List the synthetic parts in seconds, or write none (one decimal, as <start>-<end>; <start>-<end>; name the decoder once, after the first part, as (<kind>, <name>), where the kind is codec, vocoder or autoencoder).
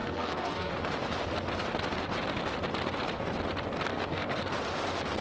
0.0-0.7 (codec, SNAC); 3.9-4.5